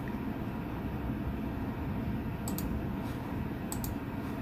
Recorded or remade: recorded